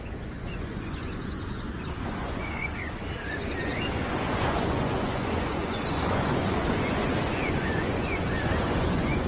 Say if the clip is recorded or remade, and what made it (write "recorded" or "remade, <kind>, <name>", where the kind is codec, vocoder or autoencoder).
remade, vocoder, Vocos